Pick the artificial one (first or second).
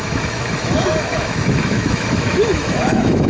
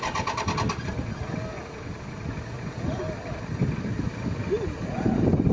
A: first